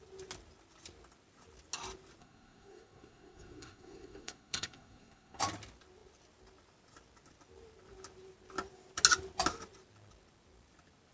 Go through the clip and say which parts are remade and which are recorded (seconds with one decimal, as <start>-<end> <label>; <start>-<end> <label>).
0.0-2.2 recorded; 2.2-5.4 remade; 5.4-11.1 recorded